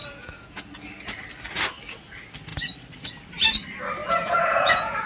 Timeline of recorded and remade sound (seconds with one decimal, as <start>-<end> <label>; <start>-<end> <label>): 0.0-0.6 remade; 0.6-4.0 recorded; 4.0-5.1 remade